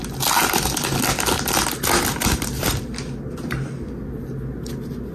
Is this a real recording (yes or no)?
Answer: yes